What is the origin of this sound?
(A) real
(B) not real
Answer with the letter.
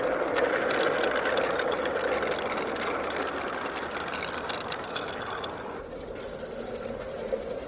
A